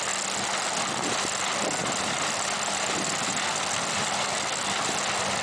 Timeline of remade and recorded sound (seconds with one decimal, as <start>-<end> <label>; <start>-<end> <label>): 0.0-1.8 recorded; 1.8-5.0 remade; 5.0-5.4 recorded